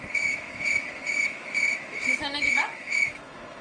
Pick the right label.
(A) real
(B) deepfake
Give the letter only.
B